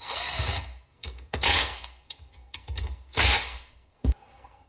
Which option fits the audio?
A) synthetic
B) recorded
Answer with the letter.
A